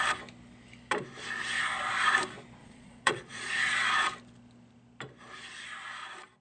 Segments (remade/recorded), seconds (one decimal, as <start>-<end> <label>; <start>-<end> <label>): 0.0-2.6 recorded; 2.6-3.6 remade; 3.6-6.4 recorded